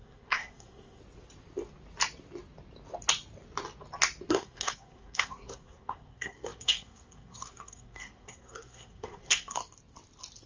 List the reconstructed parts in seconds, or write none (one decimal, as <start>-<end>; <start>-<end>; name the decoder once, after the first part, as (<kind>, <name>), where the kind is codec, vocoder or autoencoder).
0.0-1.0 (codec, SNAC); 4.3-9.6